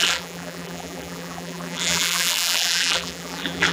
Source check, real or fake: fake